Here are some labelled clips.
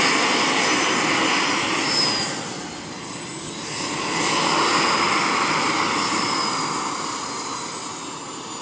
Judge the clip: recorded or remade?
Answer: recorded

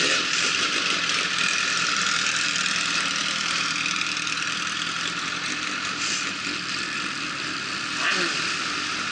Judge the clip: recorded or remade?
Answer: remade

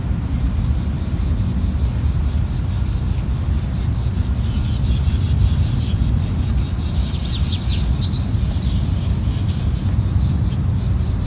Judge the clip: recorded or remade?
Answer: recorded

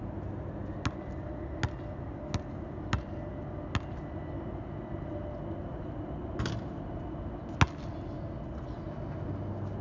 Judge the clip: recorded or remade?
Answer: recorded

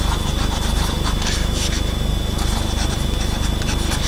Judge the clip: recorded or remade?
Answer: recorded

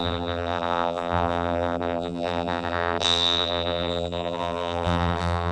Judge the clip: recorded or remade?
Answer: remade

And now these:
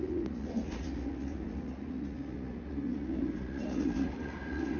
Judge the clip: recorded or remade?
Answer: remade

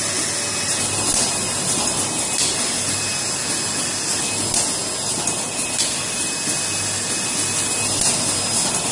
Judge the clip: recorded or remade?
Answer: recorded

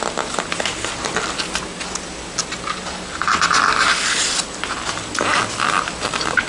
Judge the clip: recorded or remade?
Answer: recorded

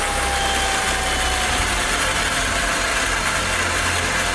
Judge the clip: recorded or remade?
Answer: recorded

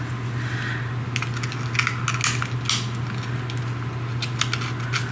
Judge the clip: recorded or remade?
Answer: recorded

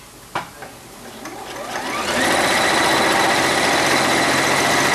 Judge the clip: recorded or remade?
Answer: recorded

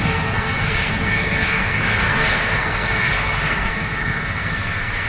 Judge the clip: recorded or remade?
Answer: remade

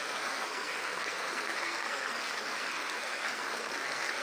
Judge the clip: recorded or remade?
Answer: remade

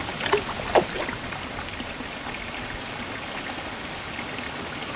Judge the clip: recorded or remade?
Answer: recorded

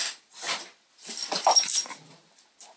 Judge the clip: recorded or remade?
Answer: recorded